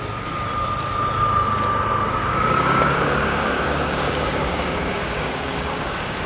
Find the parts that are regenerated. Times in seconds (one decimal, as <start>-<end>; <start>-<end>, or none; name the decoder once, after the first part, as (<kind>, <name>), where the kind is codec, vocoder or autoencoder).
2.2-6.3 (codec, DAC)